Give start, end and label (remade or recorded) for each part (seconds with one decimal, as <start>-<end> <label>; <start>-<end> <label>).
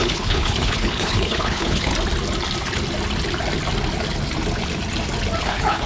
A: 0.0-1.9 remade; 1.9-5.4 recorded; 5.4-5.9 remade